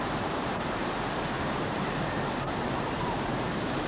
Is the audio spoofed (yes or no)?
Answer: yes